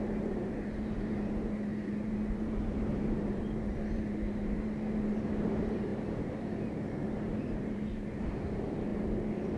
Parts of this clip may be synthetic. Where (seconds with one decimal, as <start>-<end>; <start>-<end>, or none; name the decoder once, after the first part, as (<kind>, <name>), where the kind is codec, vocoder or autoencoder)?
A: 0.0-8.9 (vocoder, BigVGAN v2)